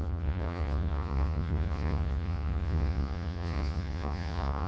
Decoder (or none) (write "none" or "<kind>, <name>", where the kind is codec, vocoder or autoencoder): vocoder, Vocos